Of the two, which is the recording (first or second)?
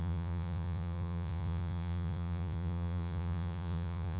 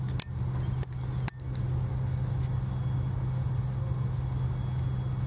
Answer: second